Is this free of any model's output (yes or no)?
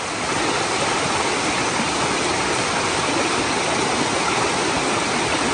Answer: yes